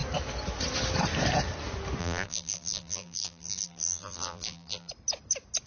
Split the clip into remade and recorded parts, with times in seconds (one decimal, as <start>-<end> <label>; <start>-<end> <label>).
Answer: 0.0-2.0 recorded; 2.0-4.9 remade; 4.9-5.7 recorded